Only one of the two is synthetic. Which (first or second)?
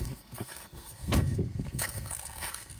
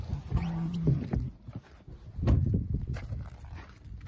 first